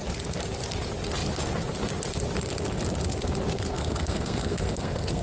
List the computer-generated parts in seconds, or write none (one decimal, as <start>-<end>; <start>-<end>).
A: 3.7-5.2